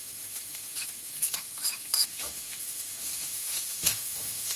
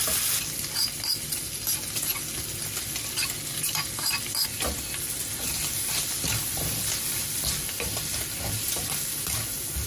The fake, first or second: first